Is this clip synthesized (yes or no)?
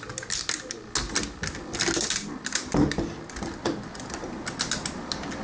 no